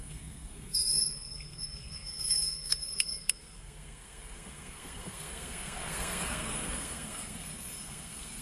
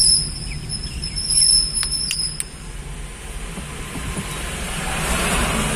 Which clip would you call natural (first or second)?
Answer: second